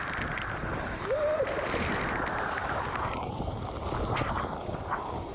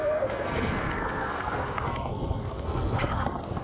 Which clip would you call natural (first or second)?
first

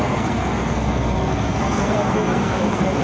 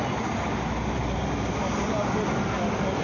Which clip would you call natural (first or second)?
second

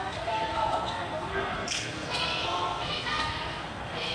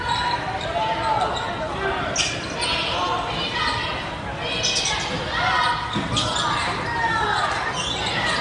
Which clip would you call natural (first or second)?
second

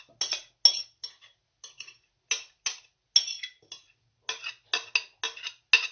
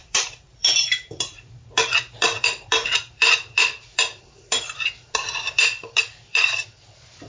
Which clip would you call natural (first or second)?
first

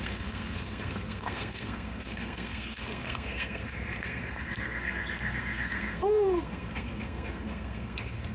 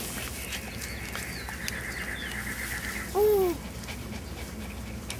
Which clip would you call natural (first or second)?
second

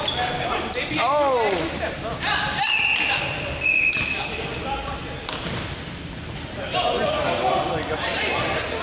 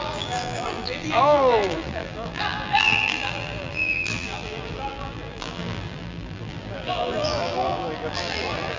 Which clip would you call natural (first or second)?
first